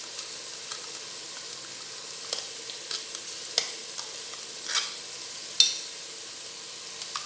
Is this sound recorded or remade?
recorded